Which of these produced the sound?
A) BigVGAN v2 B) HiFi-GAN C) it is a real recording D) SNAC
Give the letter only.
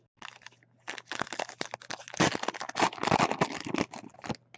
C